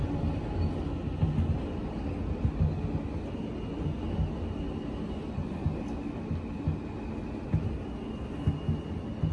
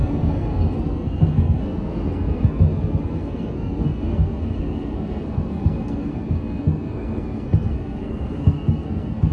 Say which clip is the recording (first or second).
first